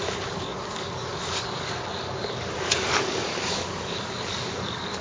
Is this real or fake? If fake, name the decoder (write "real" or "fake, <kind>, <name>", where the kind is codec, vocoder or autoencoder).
fake, codec, DAC